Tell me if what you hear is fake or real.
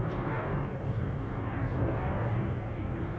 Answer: fake